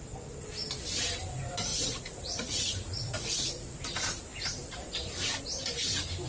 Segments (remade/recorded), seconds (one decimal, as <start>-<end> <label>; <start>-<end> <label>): 0.0-1.7 recorded; 1.7-3.5 remade; 3.5-6.3 recorded